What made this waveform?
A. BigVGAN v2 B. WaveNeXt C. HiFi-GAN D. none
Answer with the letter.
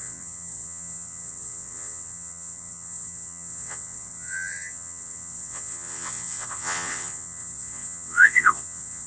B